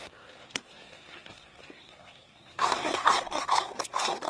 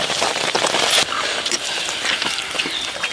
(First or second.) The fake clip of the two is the first